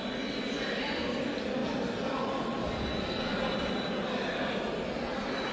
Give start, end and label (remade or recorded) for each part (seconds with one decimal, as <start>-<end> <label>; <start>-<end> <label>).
0.0-5.5 recorded